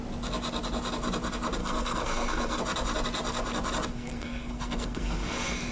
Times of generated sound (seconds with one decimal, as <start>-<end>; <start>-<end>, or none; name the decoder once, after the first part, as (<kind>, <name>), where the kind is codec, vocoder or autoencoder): 1.6-2.6 (codec, SNAC); 3.9-5.7